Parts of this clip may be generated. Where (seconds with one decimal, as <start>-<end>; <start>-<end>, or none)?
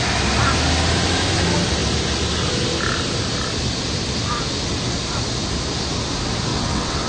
6.5-7.1